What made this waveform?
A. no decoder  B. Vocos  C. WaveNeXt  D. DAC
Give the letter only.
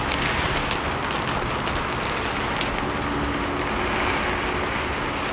A